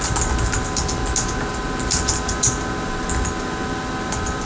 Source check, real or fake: real